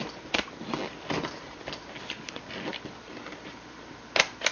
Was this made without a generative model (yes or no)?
yes